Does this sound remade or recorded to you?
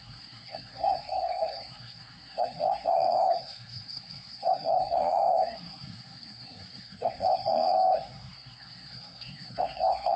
remade